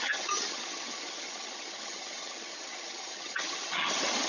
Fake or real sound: fake